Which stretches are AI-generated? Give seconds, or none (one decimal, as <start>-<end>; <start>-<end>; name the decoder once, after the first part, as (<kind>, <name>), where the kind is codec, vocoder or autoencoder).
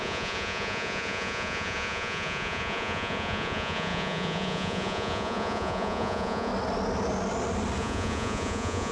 0.0-6.5 (vocoder, Vocos); 7.8-8.9